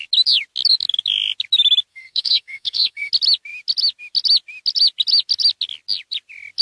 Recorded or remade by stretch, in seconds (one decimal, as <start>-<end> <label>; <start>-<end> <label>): 0.0-1.9 recorded; 1.9-3.1 remade; 3.1-6.6 recorded